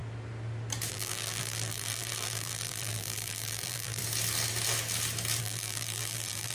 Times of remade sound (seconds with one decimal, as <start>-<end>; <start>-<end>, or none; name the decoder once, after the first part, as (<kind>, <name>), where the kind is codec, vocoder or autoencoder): 0.9-4.0 (vocoder, BigVGAN v2); 5.4-6.5